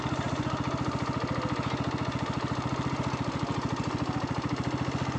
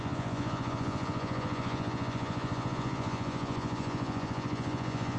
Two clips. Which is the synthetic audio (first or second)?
second